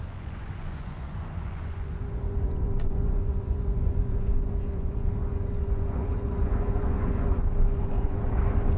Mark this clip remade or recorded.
remade